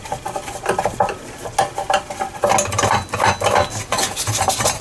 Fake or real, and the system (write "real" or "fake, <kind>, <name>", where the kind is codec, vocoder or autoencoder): real